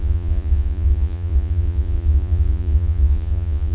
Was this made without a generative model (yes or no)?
no